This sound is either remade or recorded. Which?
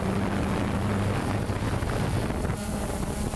recorded